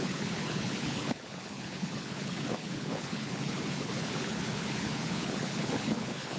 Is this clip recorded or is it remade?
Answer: remade